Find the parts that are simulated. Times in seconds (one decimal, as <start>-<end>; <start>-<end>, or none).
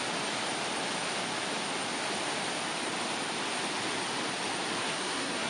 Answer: 4.8-5.5